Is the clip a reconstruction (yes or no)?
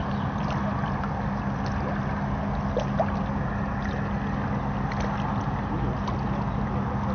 no